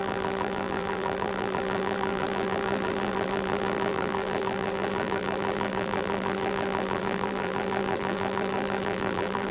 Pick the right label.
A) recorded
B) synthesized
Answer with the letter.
B